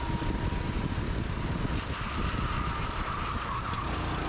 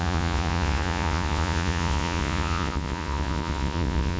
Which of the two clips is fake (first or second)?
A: second